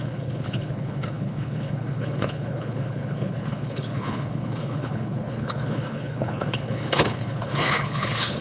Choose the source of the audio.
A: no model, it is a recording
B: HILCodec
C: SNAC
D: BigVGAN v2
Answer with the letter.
B